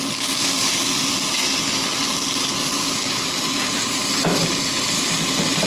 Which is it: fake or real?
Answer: real